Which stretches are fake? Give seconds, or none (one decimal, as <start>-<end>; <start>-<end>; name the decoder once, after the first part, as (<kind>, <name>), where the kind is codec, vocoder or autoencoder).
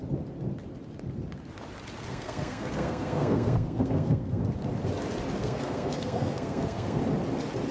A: 2.1-4.4 (codec, SNAC); 5.4-7.0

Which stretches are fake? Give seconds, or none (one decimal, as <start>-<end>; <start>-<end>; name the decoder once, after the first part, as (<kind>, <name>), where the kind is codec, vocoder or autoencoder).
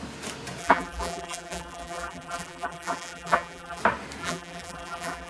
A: 0.6-3.8 (vocoder, BigVGAN v2); 4.2-5.3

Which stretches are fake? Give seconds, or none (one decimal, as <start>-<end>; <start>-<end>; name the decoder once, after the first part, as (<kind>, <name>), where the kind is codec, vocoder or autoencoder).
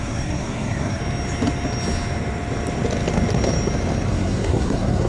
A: 0.0-1.0 (codec, SNAC); 4.1-5.1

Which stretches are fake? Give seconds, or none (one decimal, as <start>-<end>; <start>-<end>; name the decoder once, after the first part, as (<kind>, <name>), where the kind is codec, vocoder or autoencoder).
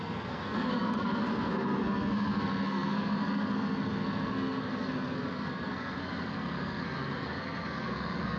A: 0.0-8.4 (codec, SNAC)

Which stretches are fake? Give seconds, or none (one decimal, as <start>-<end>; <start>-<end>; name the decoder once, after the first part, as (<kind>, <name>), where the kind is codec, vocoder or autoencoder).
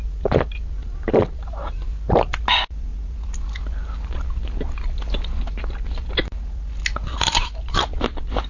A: 0.8-1.9 (vocoder, BigVGAN v2)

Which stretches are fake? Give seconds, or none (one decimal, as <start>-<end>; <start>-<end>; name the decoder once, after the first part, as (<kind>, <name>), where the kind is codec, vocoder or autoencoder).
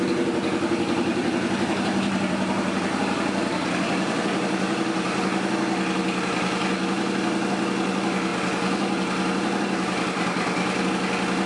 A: 1.1-3.0 (vocoder, BigVGAN v2)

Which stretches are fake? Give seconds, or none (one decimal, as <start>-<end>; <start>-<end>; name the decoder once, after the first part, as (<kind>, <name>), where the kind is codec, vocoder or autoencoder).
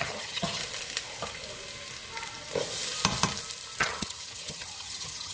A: 0.0-0.6 (vocoder, HiFi-GAN); 3.8-5.3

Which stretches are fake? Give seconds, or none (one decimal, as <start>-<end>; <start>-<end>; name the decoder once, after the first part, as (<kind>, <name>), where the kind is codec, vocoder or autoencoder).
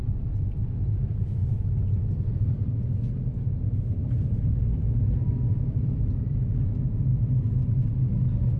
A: 4.0-6.5 (vocoder, BigVGAN v2)